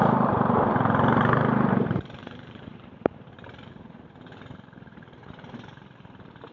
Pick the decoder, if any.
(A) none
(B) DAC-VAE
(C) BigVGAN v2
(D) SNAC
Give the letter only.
C